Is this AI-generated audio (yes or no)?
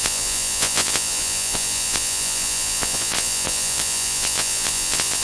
yes